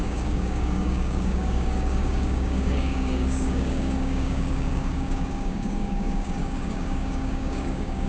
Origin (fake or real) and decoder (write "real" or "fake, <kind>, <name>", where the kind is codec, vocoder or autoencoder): fake, codec, DAC